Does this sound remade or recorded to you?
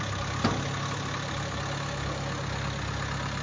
recorded